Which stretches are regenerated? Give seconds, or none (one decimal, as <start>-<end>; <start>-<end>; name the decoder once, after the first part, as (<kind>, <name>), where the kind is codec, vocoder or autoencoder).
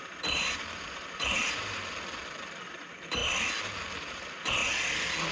0.0-1.8 (vocoder, BigVGAN v2); 2.6-3.2; 4.1-4.6